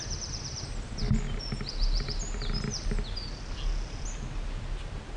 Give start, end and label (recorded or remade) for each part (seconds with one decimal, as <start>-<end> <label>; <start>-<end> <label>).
0.0-5.2 recorded